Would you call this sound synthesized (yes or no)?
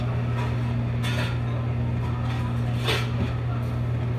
no